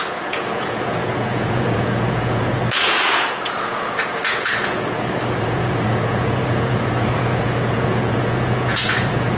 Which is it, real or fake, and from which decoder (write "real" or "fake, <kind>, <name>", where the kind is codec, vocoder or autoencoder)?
fake, vocoder, Vocos